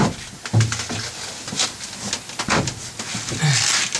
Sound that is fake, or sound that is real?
real